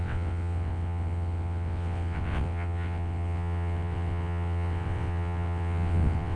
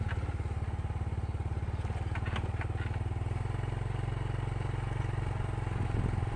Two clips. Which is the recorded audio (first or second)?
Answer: second